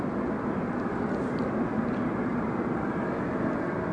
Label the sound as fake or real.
real